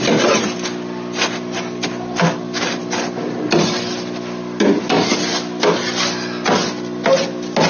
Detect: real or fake real